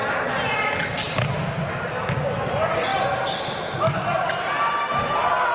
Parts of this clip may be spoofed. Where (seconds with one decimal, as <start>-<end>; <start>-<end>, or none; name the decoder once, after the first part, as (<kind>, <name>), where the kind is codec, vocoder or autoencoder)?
none